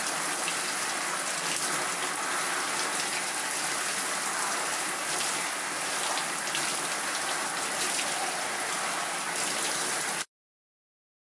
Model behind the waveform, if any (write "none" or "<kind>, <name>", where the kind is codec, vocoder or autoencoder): none